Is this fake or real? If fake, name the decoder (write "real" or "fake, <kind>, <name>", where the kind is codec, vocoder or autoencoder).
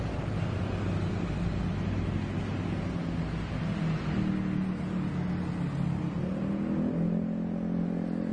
real